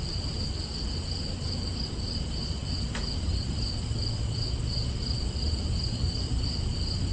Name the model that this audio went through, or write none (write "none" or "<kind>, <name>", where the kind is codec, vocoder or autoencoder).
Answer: none